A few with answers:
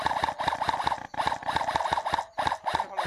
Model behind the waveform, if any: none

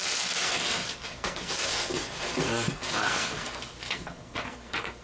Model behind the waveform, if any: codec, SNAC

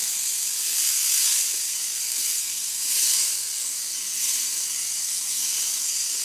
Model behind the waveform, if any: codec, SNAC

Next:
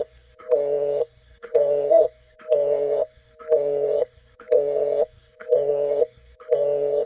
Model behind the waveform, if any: codec, SNAC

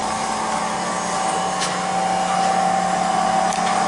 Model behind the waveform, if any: none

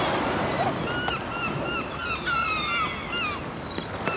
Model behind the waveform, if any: none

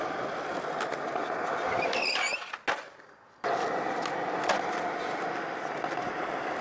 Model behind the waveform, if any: none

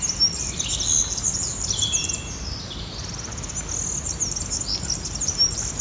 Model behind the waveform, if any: none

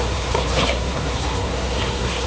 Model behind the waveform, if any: codec, SNAC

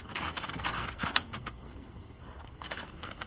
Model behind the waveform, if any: codec, SNAC